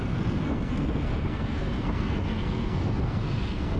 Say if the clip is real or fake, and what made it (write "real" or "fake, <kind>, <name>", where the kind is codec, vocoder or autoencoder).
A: fake, codec, SNAC